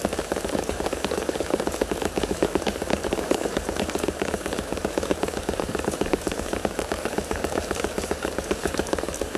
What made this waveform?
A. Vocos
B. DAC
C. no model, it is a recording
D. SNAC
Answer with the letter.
B